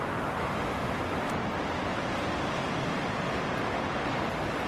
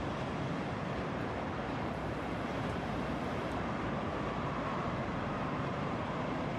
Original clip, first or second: first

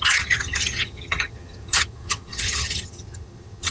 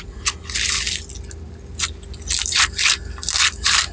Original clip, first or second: second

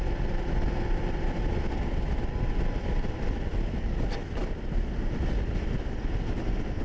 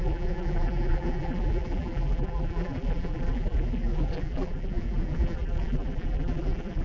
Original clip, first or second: first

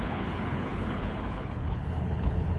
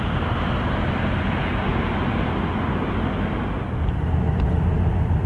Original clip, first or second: second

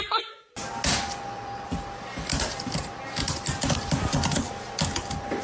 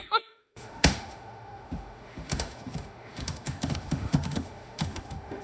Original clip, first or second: first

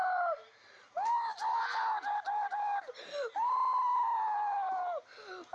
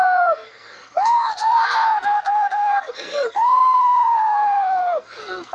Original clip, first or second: first